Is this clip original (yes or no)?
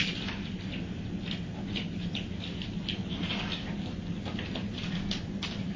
yes